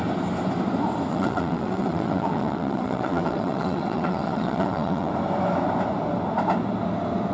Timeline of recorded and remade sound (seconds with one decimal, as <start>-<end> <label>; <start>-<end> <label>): 0.0-1.1 recorded; 1.1-5.1 remade; 5.1-7.3 recorded